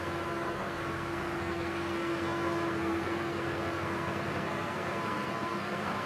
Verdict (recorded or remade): remade